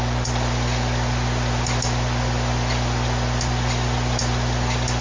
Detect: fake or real real